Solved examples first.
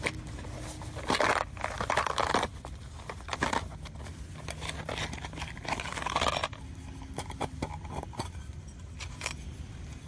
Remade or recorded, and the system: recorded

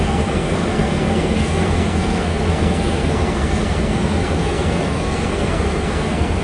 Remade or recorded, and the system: remade, codec, SNAC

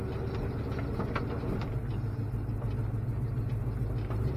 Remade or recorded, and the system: recorded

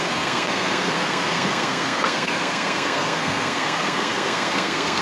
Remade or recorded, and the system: remade, codec, SNAC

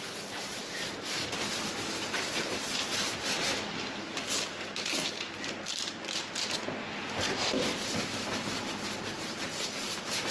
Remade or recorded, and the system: recorded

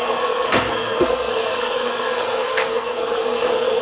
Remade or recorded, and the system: remade, codec, SNAC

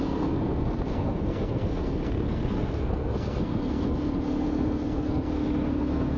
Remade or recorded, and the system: remade, codec, SNAC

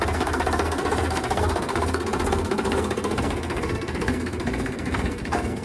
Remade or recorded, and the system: remade, codec, SNAC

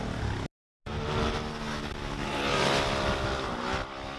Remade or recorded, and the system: recorded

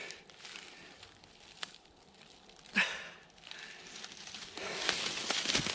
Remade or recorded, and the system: recorded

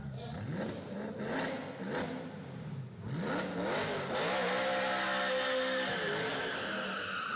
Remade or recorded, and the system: recorded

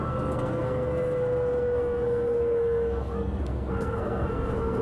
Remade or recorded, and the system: remade, codec, SNAC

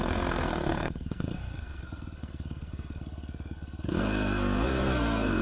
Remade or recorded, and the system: remade, codec, SNAC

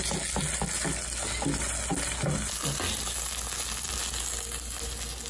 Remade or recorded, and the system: recorded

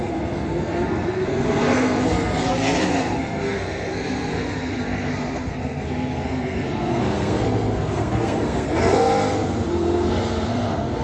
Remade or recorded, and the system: remade, codec, SNAC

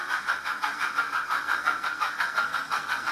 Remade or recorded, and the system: remade, codec, SNAC